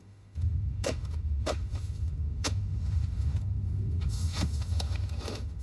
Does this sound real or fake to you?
fake